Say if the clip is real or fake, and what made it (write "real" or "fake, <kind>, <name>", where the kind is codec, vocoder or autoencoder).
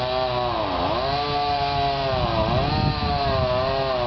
real